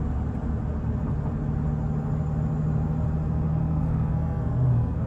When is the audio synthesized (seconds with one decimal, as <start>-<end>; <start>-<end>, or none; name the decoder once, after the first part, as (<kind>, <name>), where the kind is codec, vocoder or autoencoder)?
3.6-5.1 (codec, SNAC)